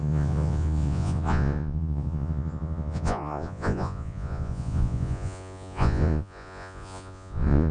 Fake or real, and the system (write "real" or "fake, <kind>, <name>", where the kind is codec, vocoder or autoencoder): fake, vocoder, Vocos